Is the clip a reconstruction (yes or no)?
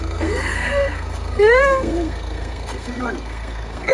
yes